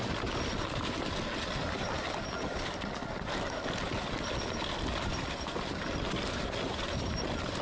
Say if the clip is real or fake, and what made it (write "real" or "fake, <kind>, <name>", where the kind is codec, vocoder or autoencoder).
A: real